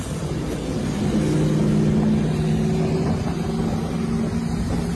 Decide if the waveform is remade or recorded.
recorded